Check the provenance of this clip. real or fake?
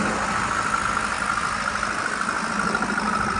real